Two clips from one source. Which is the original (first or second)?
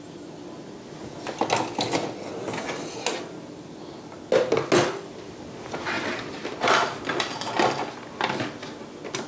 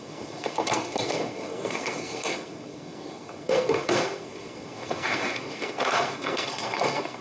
first